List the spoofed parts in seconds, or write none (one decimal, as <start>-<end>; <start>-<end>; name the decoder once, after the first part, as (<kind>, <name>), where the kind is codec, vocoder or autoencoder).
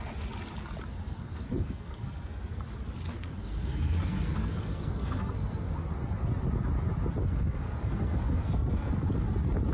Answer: 1.0-2.6 (codec, SNAC); 3.1-5.7; 7.2-8.9